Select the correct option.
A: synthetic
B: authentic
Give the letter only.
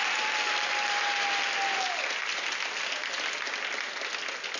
B